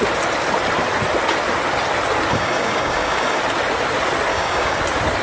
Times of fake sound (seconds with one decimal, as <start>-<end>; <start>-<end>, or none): 2.3-3.4; 4.3-4.8